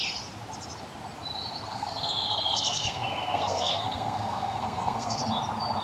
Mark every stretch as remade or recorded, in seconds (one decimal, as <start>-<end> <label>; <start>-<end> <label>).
0.0-1.7 recorded; 1.7-5.2 remade; 5.2-5.8 recorded